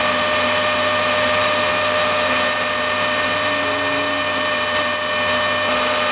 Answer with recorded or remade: recorded